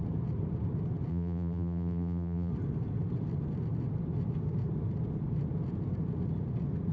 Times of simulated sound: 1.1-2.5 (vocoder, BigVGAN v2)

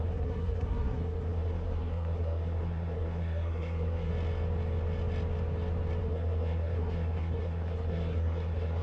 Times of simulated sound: 0.0-4.1 (codec, SNAC); 6.0-8.8

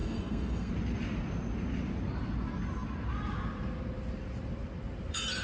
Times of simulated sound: 0.0-0.7 (codec, SNAC)

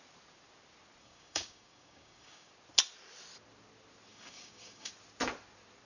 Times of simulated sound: 1.0-2.5 (codec, DAC); 4.1-4.9

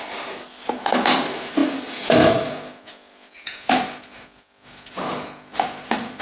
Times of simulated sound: none